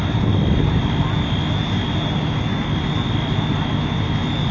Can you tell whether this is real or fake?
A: real